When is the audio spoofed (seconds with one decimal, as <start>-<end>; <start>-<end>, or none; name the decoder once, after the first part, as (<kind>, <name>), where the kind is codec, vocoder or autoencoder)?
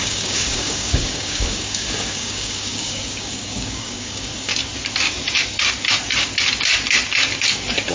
0.0-4.5 (codec, DAC)